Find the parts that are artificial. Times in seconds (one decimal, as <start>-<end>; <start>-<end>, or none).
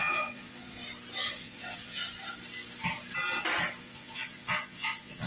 0.0-0.8; 1.3-2.0; 3.8-5.3